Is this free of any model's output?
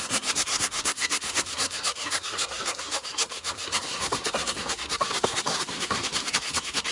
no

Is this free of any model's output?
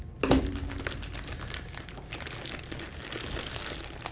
yes